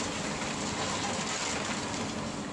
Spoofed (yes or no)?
no